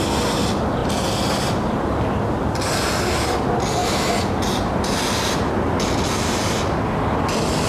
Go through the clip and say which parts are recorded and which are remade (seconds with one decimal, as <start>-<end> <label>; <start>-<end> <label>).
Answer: 0.0-7.7 recorded